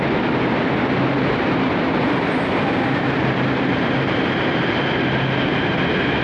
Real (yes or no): yes